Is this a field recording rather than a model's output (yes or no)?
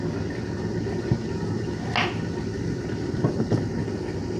yes